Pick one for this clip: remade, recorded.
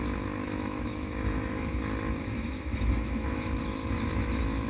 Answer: remade